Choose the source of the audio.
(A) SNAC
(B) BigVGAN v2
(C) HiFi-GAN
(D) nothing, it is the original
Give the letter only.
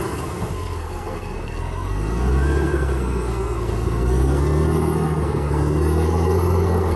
A